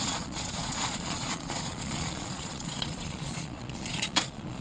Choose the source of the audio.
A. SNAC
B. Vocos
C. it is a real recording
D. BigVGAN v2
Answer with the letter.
B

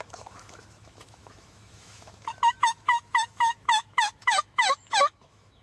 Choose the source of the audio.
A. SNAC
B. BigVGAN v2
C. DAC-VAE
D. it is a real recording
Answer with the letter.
C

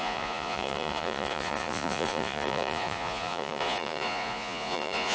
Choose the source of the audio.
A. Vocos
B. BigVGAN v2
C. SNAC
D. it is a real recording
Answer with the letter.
A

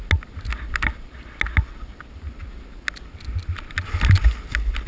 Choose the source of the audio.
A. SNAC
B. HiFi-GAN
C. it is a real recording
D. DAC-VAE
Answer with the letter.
C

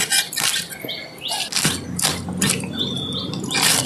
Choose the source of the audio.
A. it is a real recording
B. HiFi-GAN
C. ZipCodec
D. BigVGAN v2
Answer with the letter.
A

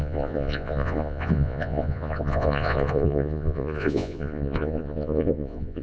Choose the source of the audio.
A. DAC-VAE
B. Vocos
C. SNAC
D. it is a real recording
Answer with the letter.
B